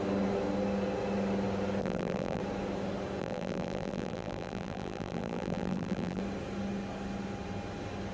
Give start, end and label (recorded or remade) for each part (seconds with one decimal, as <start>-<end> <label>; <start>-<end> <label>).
0.0-1.8 recorded; 1.8-2.4 remade; 2.4-3.2 recorded; 3.2-6.2 remade; 6.2-8.1 recorded